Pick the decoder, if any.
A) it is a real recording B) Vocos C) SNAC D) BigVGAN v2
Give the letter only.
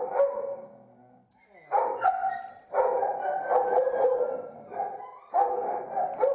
A